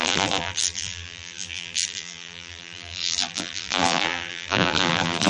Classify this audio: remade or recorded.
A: remade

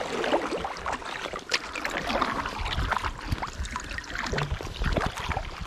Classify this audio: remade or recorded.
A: recorded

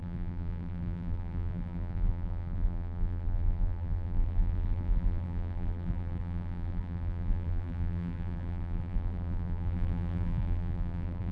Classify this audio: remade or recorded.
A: remade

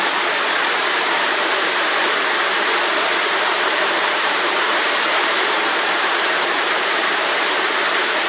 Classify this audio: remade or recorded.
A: remade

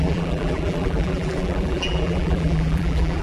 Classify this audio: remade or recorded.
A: remade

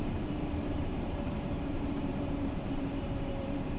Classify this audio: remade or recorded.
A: remade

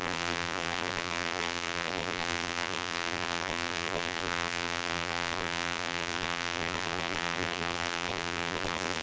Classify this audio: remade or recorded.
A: remade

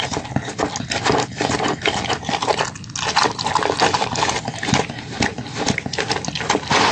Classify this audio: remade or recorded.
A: recorded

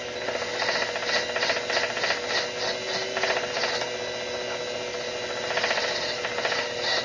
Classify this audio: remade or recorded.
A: recorded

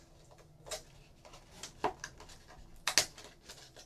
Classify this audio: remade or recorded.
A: recorded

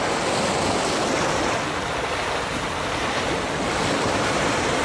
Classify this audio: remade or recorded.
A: recorded